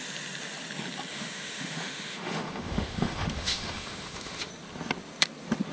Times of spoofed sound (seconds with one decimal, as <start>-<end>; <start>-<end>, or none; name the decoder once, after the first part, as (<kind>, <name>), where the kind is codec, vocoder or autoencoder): 1.1-4.5 (autoencoder, DAC-VAE)